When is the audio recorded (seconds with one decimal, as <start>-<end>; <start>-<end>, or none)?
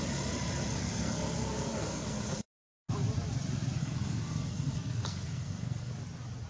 0.0-0.8; 2.9-3.8; 5.9-6.5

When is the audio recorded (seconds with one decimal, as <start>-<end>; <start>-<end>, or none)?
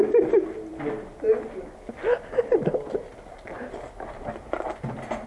0.0-5.3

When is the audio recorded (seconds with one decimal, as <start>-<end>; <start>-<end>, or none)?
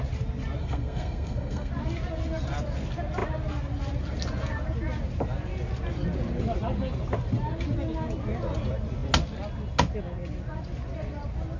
0.0-0.6; 1.7-11.6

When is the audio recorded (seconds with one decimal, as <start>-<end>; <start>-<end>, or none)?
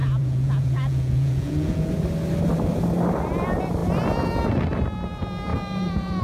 1.9-5.5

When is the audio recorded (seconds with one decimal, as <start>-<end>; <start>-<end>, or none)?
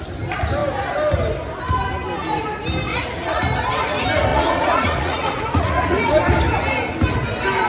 0.0-2.9; 3.4-4.3; 6.1-7.7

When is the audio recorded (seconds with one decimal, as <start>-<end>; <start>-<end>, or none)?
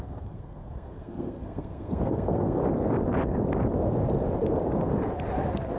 2.6-5.8